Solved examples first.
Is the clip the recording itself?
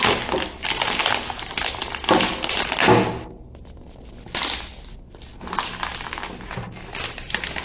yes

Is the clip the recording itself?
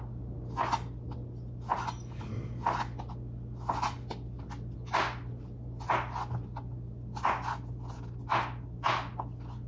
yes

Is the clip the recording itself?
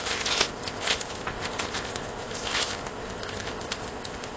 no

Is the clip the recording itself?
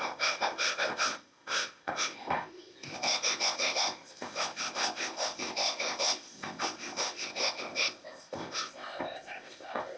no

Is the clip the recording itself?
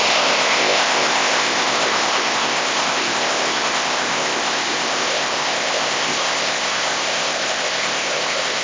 no